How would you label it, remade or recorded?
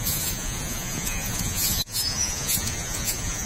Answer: remade